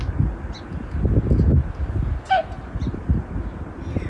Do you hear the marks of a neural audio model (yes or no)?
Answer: no